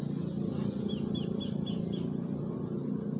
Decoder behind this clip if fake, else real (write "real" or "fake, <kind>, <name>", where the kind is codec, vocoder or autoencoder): real